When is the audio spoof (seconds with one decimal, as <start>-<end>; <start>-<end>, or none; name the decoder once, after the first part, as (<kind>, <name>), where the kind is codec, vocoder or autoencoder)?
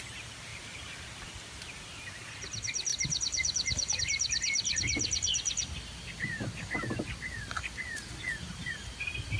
0.5-2.0 (vocoder, BigVGAN v2); 2.9-4.0